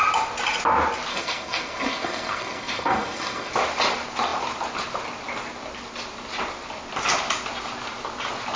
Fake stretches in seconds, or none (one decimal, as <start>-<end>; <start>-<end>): 1.1-3.5